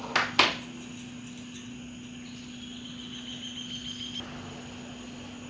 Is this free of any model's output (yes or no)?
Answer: yes